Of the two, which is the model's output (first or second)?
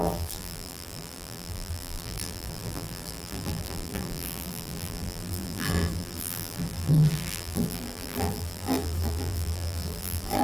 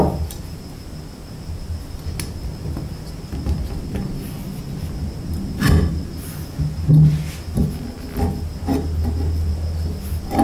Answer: first